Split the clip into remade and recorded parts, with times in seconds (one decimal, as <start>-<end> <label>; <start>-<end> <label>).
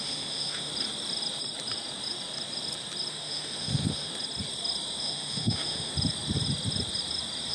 0.0-0.7 remade; 0.7-3.1 recorded; 3.1-4.1 remade; 4.1-5.0 recorded; 5.0-5.9 remade; 5.9-7.5 recorded